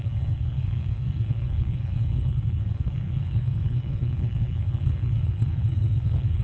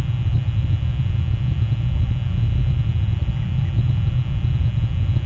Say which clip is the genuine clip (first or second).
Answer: second